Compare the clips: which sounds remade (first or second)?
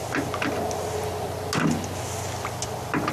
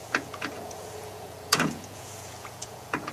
second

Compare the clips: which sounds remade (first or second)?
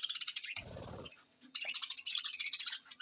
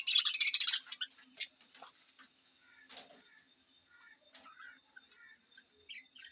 first